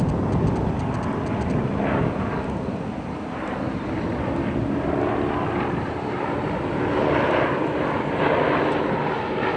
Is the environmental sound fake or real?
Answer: real